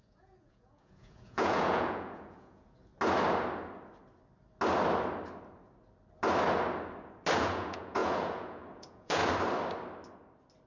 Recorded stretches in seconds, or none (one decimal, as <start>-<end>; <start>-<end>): 2.9-7.4; 9.2-10.7